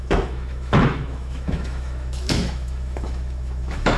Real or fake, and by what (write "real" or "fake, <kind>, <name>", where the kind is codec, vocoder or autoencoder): fake, autoencoder, DAC-VAE